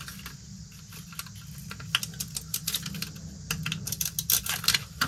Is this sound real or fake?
real